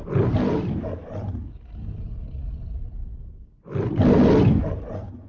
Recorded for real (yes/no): yes